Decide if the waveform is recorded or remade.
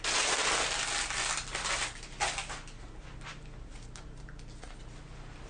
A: recorded